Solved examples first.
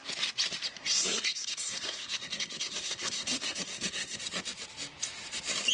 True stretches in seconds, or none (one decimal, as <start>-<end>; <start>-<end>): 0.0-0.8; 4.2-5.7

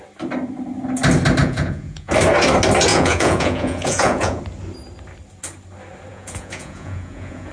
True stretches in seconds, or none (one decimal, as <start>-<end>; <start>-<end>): 0.0-1.4; 2.1-2.9; 4.4-6.1

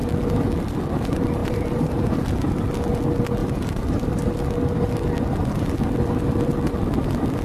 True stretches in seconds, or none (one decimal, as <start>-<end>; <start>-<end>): 0.0-1.4; 2.2-3.4; 4.2-7.4

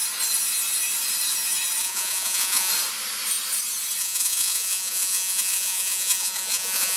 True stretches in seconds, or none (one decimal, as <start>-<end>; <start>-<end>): 0.0-1.8; 2.7-4.0

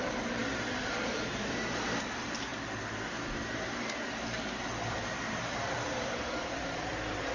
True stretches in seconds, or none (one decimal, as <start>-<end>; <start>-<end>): 2.5-5.5